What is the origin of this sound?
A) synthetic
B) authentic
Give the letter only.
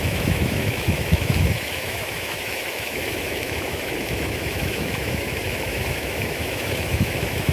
A